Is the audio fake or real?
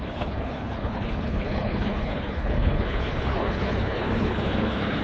fake